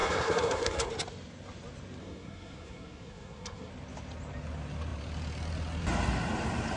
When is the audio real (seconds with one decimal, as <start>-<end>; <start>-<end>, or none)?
0.9-2.0; 3.7-6.8